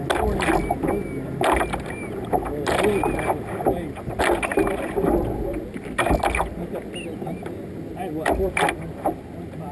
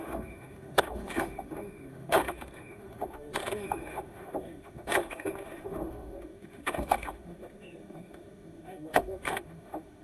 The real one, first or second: first